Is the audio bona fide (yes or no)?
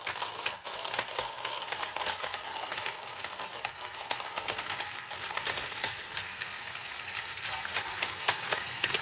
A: no